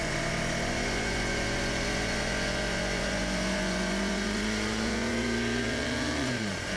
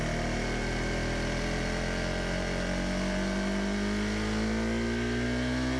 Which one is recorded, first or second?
second